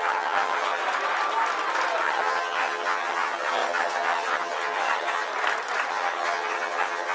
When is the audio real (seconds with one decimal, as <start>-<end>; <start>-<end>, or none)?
0.8-2.0; 5.3-5.9